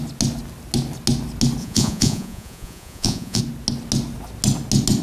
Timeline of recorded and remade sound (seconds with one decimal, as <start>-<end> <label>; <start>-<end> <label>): 0.0-1.6 recorded; 1.6-3.4 remade; 3.4-5.0 recorded